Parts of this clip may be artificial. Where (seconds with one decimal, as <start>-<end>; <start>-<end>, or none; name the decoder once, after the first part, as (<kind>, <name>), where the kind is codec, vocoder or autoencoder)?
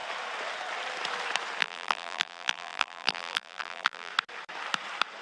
1.6-4.1 (vocoder, BigVGAN v2)